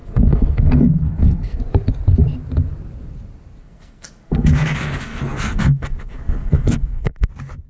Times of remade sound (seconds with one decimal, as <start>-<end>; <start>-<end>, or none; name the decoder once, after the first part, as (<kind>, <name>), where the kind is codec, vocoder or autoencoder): 0.0-1.6 (codec, SNAC); 3.6-7.3